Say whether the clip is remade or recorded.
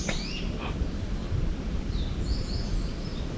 remade